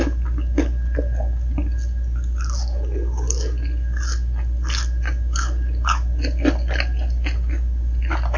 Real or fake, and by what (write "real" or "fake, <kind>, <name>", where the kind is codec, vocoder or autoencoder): real